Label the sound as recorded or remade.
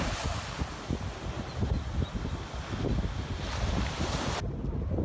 recorded